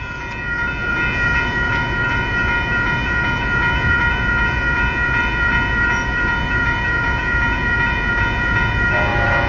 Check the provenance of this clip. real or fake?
fake